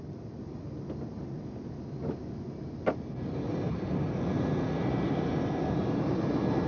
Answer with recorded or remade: recorded